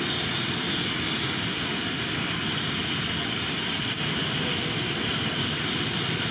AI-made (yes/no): no